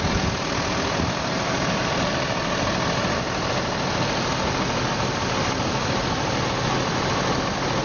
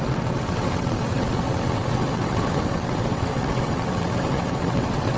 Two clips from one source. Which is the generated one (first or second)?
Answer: second